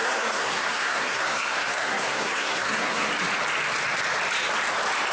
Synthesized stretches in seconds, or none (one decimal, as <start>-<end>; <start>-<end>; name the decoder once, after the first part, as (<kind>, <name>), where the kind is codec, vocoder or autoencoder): 0.0-3.1 (codec, SNAC)